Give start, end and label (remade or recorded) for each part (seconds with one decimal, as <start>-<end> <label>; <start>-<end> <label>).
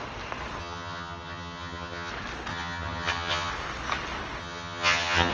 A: 0.0-0.6 recorded; 0.6-2.1 remade; 2.1-2.5 recorded; 2.5-3.5 remade; 3.5-4.4 recorded; 4.4-5.3 remade